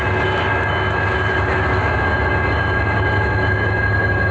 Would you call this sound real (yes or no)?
yes